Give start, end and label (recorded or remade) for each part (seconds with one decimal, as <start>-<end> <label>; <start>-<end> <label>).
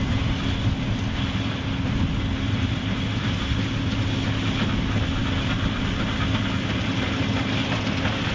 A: 0.0-8.3 recorded